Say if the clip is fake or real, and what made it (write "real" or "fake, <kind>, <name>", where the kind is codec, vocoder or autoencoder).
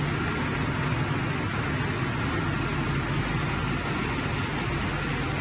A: real